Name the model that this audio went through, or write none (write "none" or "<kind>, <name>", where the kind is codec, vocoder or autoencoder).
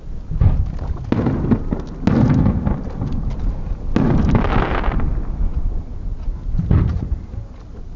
none